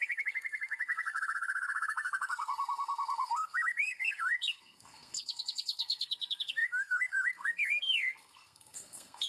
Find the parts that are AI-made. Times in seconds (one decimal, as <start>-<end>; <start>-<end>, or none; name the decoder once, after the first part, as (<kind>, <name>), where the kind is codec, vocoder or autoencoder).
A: 0.0-9.3 (codec, SNAC)